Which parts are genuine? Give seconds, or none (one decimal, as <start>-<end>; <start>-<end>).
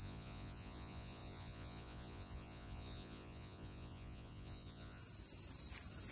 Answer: 5.0-6.1